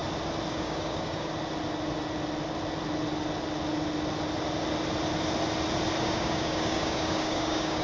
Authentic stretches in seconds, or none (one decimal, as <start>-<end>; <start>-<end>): 0.0-0.5; 1.3-6.0